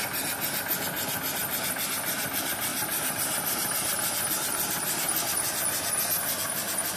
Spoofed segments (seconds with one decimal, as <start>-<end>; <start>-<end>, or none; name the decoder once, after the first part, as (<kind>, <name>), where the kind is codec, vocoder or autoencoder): none